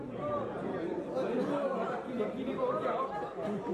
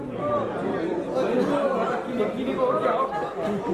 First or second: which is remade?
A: first